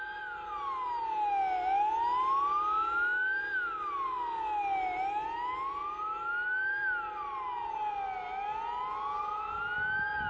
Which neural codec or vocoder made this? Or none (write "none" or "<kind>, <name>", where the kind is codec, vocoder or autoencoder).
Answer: none